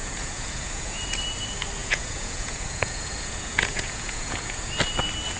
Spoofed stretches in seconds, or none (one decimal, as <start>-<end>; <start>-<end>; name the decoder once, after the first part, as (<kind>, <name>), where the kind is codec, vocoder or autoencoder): 0.0-1.0 (vocoder, Vocos); 1.8-4.7